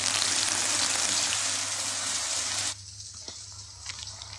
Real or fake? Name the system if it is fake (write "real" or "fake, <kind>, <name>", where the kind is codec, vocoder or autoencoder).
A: real